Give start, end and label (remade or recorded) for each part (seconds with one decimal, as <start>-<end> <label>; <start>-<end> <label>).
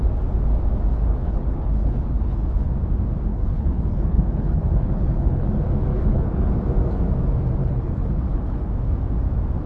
0.0-0.9 recorded; 0.9-2.7 remade; 2.7-3.3 recorded; 3.3-5.5 remade; 5.5-5.9 recorded; 5.9-6.5 remade; 6.5-7.6 recorded; 7.6-8.7 remade; 8.7-9.7 recorded